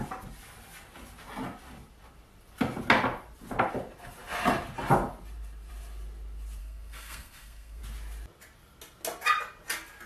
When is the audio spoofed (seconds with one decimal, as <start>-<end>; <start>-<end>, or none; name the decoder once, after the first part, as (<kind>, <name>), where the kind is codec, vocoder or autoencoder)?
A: 6.6-7.8 (codec, SNAC)